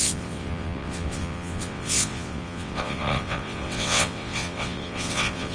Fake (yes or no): yes